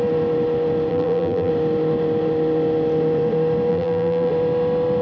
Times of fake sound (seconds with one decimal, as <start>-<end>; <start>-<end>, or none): 0.9-1.5; 3.7-4.3